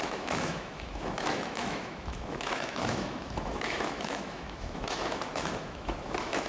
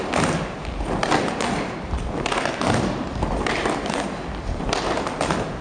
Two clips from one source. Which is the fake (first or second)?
first